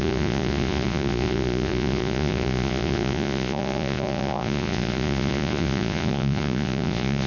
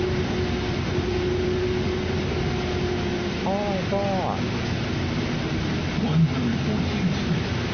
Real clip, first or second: second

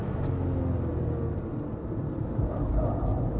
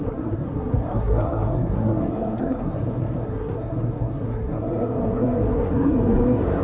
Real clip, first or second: first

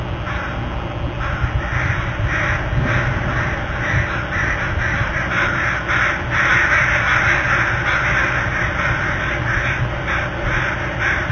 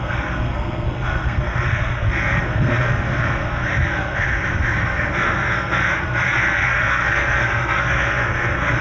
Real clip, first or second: first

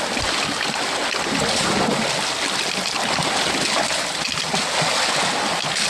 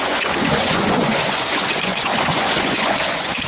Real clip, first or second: first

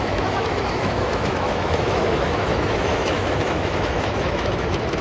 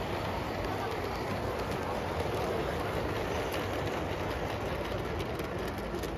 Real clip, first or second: second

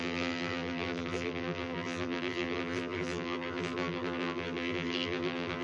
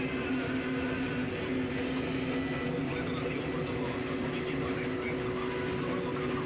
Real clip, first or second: second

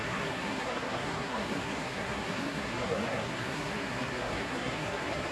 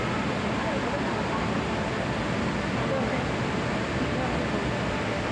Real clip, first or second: second